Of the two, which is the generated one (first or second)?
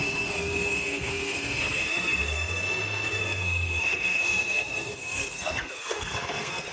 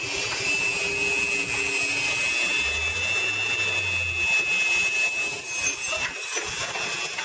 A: first